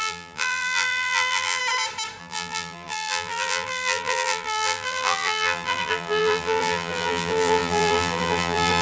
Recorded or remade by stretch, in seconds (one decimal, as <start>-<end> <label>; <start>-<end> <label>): 0.0-1.6 remade; 1.6-2.2 recorded; 2.2-8.8 remade